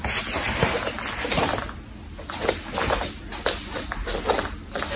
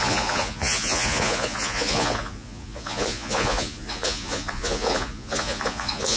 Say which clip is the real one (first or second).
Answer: first